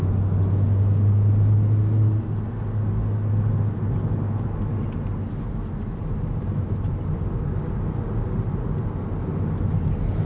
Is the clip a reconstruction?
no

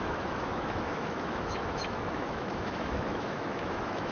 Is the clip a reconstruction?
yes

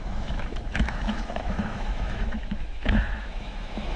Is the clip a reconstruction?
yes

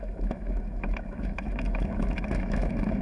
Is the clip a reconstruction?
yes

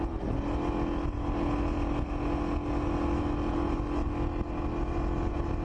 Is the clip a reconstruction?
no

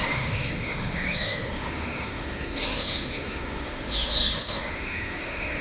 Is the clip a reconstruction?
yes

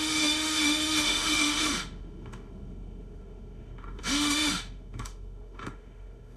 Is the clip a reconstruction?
yes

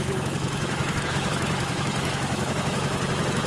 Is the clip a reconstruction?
yes